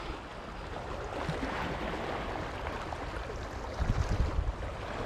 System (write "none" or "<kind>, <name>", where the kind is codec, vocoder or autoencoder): none